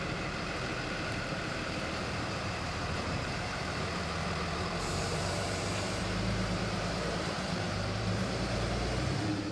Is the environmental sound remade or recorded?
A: remade